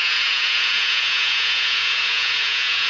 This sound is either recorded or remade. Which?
remade